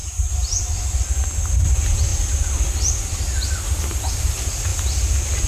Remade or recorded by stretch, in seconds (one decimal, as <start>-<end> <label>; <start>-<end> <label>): 0.0-0.6 remade; 0.6-5.5 recorded